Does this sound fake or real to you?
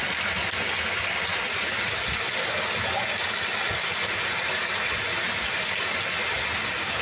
real